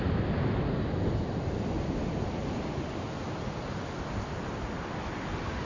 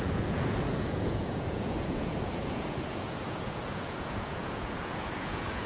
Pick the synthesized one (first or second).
second